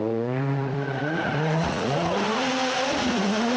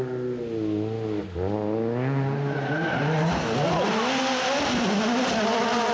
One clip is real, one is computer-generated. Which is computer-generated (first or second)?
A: first